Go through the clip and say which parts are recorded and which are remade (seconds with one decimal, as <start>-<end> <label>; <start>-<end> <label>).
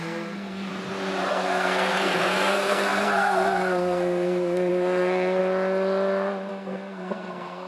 0.0-0.7 remade; 0.7-1.3 recorded; 1.3-5.4 remade; 5.4-6.5 recorded; 6.5-7.7 remade